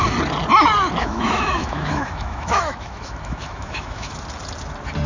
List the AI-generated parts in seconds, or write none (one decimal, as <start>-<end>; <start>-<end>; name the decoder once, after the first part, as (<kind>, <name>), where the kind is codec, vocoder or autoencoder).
1.0-4.1 (autoencoder, DAC-VAE)